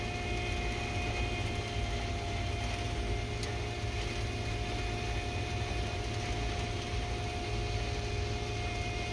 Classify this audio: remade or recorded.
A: recorded